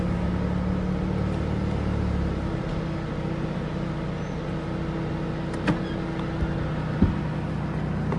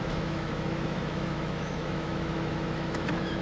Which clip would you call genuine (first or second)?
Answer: first